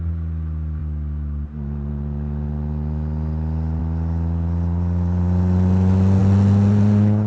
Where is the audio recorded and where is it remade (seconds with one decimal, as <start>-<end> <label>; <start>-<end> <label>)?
0.0-7.3 recorded